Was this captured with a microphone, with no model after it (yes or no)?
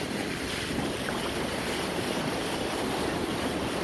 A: yes